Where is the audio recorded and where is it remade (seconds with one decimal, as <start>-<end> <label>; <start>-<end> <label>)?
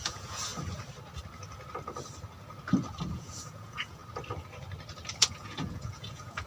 0.0-0.5 remade; 0.5-3.1 recorded; 3.1-4.0 remade; 4.0-5.2 recorded; 5.2-6.5 remade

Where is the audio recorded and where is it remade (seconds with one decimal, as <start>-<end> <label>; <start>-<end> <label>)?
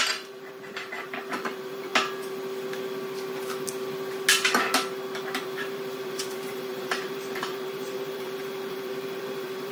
0.0-1.9 remade; 1.9-5.4 recorded; 5.4-9.7 remade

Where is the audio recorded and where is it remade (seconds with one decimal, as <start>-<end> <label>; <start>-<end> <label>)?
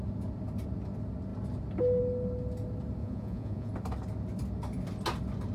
0.0-3.0 recorded; 3.0-3.7 remade; 3.7-5.5 recorded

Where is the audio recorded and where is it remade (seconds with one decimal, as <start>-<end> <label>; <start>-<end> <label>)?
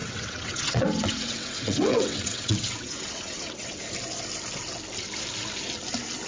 0.0-3.8 remade; 3.8-6.3 recorded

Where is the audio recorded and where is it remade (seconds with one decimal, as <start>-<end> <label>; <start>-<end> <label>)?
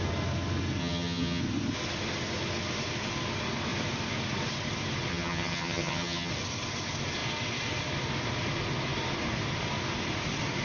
0.0-0.8 recorded; 0.8-1.4 remade; 1.4-5.1 recorded; 5.1-6.3 remade; 6.3-10.6 recorded